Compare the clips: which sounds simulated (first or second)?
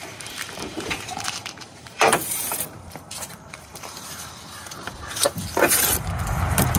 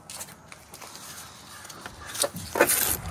first